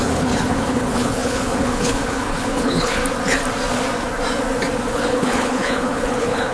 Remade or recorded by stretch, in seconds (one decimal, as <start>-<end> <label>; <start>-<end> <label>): 0.0-3.0 remade; 3.0-4.9 recorded; 4.9-6.5 remade